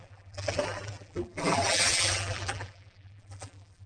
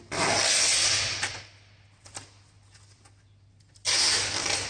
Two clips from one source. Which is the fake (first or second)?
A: first